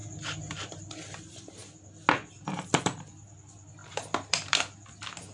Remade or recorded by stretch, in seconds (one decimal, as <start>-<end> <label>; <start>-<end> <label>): 0.0-3.8 recorded; 3.8-4.6 remade; 4.6-5.3 recorded